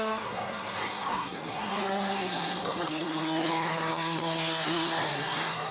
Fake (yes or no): yes